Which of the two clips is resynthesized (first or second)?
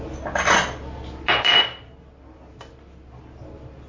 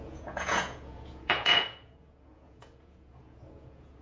second